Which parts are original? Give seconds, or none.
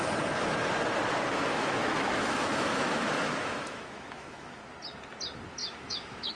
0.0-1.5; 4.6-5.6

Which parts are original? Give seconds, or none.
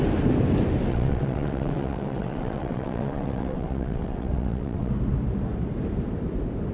0.0-0.9; 4.9-6.7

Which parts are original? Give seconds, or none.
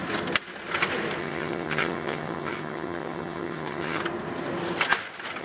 0.0-1.2; 4.0-5.4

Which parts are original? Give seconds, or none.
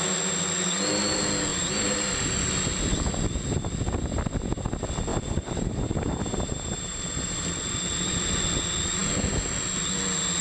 0.0-1.5; 2.3-5.1; 7.5-10.4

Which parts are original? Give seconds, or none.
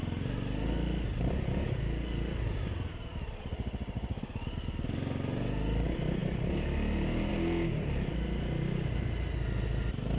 0.0-3.1; 4.2-10.2